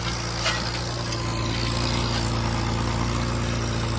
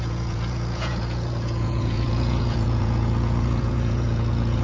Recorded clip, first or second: first